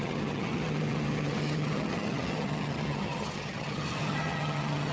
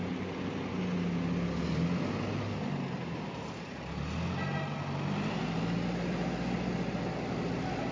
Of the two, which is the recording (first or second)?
second